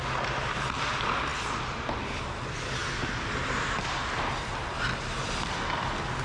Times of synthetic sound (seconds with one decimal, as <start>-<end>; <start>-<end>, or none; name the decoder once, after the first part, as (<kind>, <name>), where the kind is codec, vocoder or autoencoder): none